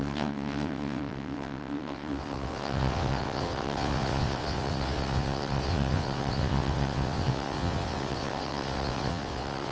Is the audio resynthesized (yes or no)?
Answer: yes